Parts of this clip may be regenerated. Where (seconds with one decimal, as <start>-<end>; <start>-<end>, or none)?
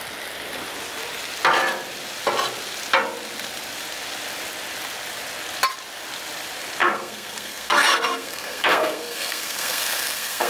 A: 6.8-10.5